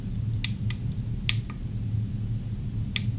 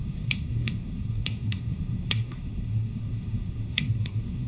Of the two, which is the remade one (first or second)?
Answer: second